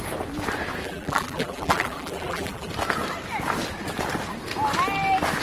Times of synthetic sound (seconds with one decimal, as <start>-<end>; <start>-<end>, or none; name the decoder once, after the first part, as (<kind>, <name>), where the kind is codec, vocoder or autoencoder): 0.8-2.7 (vocoder, BigVGAN v2)